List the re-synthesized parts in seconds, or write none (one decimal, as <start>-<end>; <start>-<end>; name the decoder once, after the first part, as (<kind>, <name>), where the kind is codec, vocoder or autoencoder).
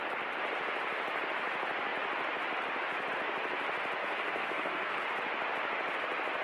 4.0-5.0 (codec, SNAC)